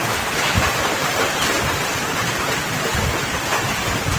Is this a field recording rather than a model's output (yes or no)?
yes